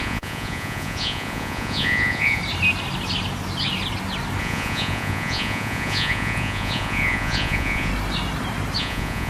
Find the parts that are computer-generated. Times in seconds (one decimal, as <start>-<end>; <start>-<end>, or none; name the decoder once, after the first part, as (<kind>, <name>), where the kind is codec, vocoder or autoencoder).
0.0-2.4 (vocoder, Vocos); 4.4-7.9; 8.8-9.3